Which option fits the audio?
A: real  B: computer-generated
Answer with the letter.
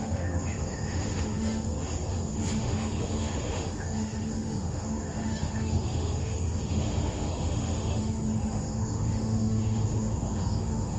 B